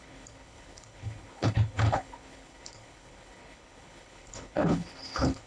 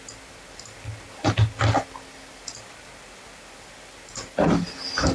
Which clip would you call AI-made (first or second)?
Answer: first